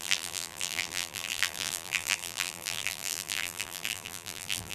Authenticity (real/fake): fake